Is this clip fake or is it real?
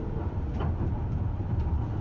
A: fake